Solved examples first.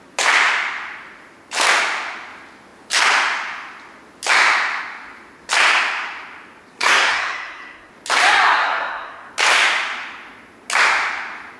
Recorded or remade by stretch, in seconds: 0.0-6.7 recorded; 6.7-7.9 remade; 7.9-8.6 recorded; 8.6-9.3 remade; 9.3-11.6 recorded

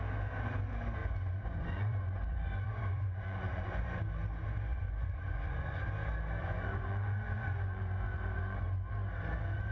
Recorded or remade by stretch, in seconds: 0.0-1.0 recorded; 1.0-4.0 remade; 4.0-4.7 recorded; 4.7-5.8 remade; 5.8-6.4 recorded; 6.4-8.9 remade; 8.9-9.7 recorded

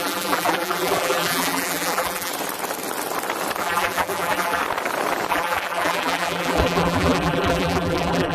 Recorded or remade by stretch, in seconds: 0.0-2.3 remade; 2.3-3.6 recorded; 3.6-4.6 remade; 4.6-5.3 recorded; 5.3-8.3 remade

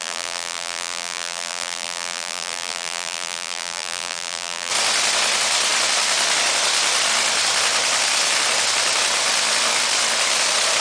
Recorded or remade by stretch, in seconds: 0.0-4.7 remade; 4.7-10.8 recorded

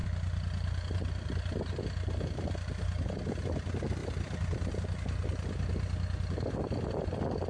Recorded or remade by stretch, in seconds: 0.0-4.0 recorded; 4.0-4.7 remade; 4.7-7.5 recorded

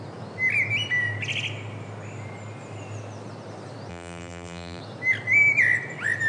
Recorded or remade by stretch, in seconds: 0.0-3.9 recorded; 3.9-4.8 remade; 4.8-6.3 recorded